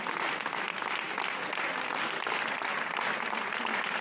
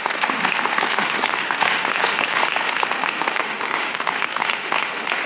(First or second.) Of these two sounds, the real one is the first